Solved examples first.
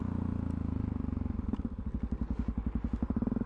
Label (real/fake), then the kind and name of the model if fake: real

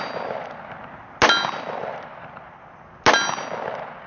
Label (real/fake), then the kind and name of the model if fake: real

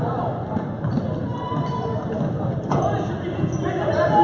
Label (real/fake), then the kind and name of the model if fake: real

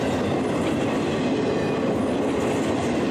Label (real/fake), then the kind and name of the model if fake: real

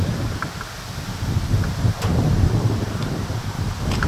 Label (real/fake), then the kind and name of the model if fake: fake, vocoder, BigVGAN v2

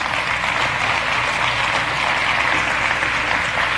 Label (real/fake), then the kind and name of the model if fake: real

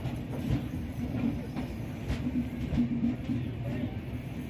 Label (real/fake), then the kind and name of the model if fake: fake, vocoder, BigVGAN v2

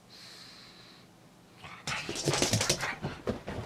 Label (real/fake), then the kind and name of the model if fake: real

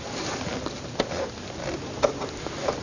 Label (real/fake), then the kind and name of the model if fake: real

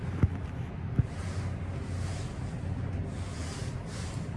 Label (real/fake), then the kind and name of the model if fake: real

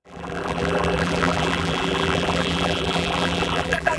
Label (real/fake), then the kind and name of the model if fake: fake, vocoder, BigVGAN v2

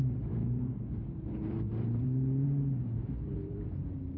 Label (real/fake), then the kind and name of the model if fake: fake, vocoder, BigVGAN v2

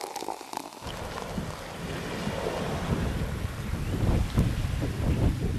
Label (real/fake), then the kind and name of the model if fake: real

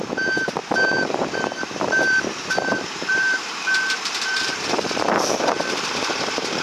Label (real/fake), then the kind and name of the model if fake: fake, vocoder, BigVGAN v2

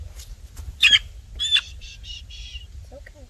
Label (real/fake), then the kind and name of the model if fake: real